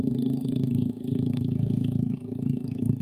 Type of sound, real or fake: fake